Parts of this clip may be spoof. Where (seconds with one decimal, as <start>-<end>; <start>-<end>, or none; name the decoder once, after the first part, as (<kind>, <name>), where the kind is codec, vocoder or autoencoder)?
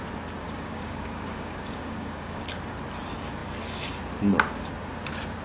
0.4-2.4 (codec, DAC)